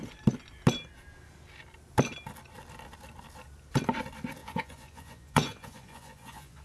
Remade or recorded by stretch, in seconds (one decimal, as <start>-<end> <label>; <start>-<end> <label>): 0.0-4.4 recorded; 4.4-6.6 remade